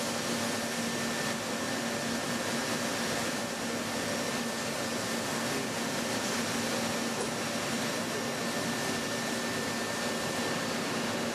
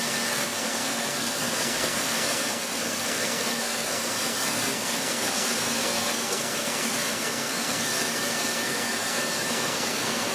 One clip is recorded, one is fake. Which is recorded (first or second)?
first